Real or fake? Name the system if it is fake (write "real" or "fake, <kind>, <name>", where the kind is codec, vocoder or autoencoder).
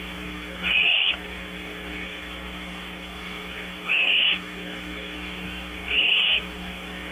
fake, codec, DAC